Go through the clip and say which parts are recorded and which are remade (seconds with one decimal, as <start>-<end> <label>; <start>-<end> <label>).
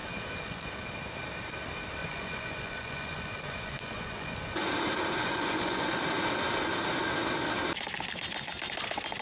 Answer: 0.0-0.8 remade; 0.8-2.0 recorded; 2.0-4.7 remade; 4.7-5.2 recorded; 5.2-6.0 remade; 6.0-9.2 recorded